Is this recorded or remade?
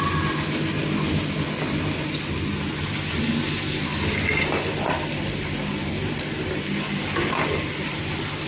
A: recorded